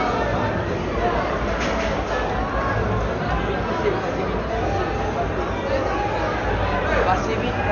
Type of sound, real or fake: real